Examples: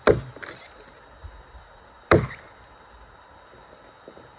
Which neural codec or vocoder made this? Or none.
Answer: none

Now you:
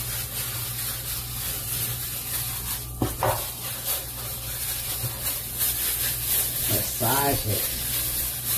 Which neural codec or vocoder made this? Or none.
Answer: none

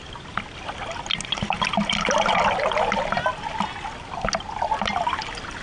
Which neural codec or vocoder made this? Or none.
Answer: none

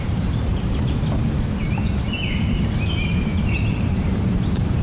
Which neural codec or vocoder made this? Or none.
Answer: vocoder, BigVGAN v2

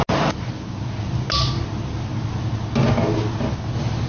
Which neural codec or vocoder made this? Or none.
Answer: none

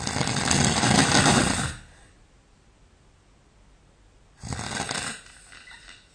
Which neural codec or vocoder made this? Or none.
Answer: none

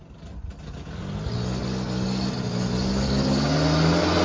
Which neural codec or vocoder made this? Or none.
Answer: none